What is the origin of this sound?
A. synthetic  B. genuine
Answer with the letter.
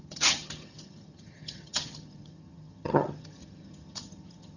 A